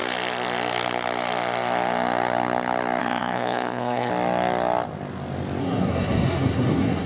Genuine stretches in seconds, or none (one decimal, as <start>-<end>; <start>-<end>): 0.0-3.0; 4.1-5.6